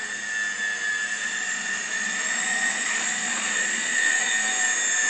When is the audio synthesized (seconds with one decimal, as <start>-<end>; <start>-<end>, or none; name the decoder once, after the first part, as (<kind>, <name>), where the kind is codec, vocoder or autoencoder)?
1.2-4.3 (vocoder, Vocos)